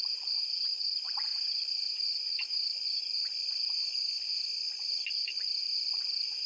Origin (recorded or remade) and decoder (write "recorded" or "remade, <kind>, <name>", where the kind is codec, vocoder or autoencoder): recorded